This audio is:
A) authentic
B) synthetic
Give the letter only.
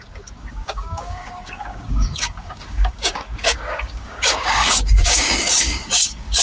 B